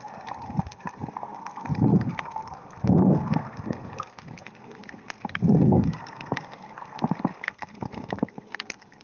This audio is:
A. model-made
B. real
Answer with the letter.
A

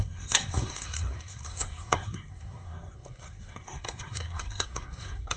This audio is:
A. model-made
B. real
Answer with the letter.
A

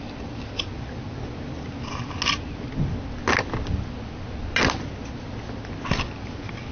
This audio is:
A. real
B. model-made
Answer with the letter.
A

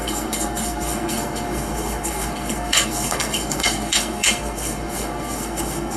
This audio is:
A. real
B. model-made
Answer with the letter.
B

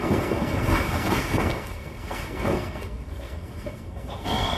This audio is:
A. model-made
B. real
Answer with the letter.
A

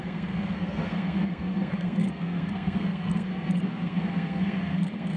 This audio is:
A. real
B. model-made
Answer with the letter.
B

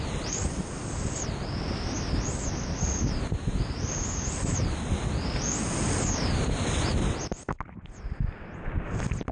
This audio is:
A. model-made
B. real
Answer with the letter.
B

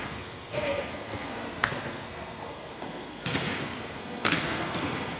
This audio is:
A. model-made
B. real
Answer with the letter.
A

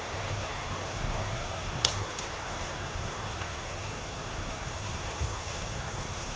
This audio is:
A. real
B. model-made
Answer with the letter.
B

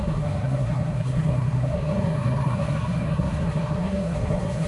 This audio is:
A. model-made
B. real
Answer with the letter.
A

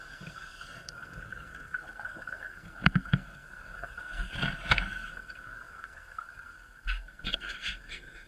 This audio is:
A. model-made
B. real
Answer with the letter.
A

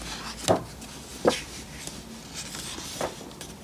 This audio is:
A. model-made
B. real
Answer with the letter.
B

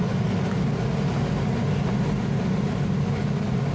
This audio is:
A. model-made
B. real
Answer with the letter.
B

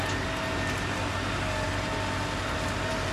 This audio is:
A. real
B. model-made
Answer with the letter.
A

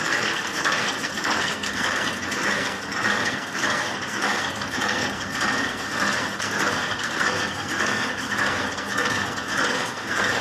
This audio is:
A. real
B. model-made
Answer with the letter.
B